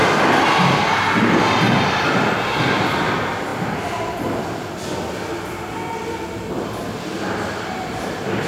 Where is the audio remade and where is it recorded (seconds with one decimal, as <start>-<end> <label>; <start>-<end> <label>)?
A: 0.0-8.5 recorded